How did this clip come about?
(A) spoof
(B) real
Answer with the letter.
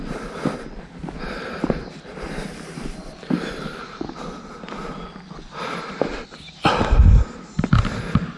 B